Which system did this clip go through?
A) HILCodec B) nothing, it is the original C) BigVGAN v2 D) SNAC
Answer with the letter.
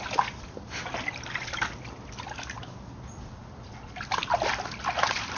B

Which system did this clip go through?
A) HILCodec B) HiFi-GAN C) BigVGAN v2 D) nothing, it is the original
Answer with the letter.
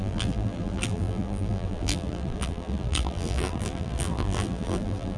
C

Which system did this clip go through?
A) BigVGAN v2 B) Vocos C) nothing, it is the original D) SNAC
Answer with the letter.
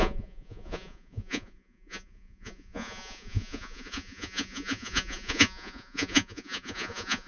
B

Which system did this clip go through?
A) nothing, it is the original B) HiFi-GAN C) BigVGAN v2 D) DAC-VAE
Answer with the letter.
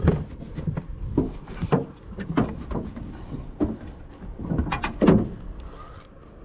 A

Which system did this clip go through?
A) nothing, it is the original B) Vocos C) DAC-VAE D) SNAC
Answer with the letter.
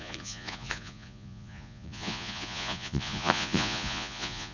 B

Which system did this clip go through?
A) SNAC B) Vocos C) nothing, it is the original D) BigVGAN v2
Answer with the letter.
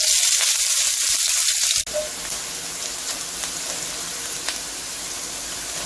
C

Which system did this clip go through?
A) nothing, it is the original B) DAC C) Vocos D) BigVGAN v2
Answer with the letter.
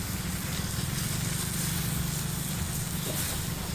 A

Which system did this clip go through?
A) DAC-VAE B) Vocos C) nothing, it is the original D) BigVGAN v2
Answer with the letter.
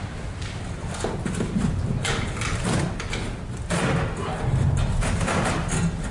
C